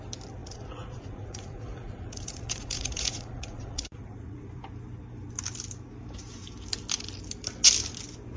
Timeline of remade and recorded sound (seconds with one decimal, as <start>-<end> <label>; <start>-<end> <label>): 0.0-0.4 recorded; 0.4-4.6 remade; 4.6-8.4 recorded